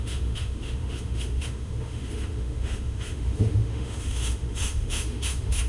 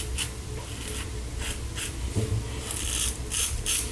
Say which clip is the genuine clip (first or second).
second